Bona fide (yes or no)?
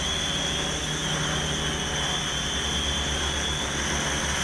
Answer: yes